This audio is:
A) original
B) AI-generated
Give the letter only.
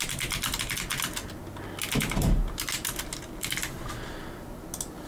A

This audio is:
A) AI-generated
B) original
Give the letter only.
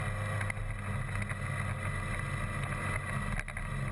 B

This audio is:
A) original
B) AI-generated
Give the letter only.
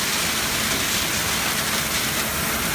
A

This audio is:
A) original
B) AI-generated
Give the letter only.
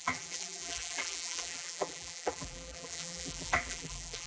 B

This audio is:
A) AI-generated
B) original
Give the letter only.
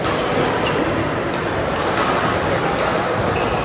B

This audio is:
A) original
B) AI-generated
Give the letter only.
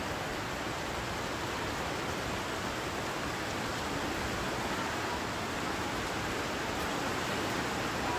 A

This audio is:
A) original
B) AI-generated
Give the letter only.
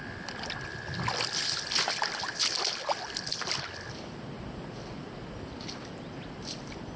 A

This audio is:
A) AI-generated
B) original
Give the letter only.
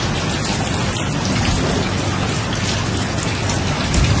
B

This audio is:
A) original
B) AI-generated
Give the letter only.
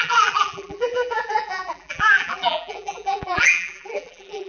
B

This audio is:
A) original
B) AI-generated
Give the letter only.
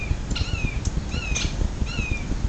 A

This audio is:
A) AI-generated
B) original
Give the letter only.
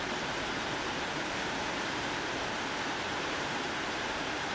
A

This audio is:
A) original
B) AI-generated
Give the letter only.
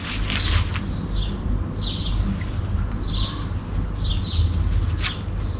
A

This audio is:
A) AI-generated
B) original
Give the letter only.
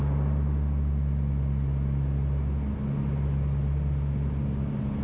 B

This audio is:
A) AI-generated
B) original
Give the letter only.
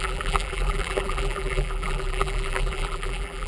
A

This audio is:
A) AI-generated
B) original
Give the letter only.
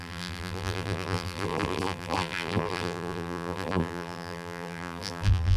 A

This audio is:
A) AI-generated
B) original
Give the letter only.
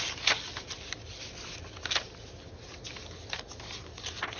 B